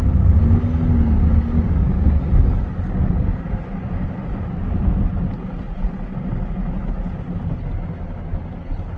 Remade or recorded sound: recorded